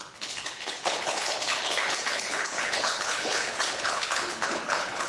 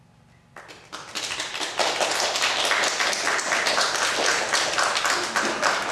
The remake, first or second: first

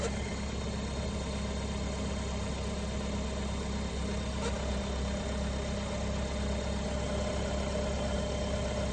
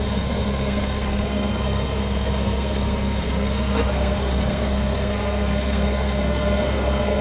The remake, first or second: second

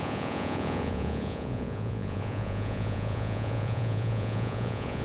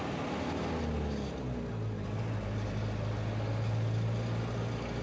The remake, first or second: first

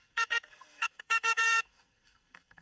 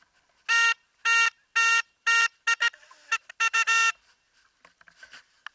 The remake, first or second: first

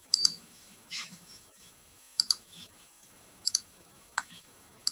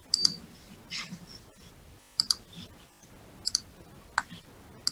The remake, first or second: first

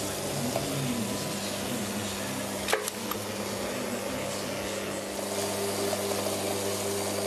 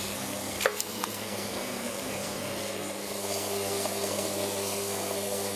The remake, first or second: second